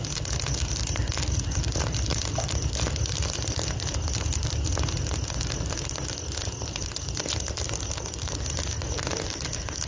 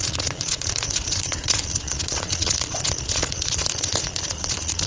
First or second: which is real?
first